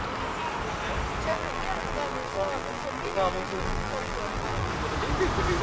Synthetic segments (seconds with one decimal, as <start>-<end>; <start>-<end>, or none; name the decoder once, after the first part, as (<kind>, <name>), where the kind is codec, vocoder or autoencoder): 1.3-4.7 (vocoder, BigVGAN v2)